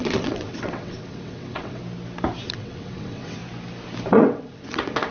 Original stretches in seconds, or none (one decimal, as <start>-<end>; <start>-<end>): 1.8-2.4; 3.4-4.1